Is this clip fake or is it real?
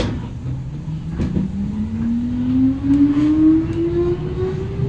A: real